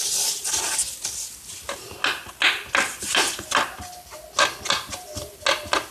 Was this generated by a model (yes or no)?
no